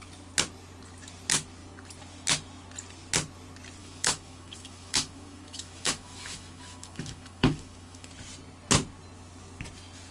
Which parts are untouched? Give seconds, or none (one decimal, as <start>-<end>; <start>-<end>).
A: 0.0-3.8; 8.1-10.1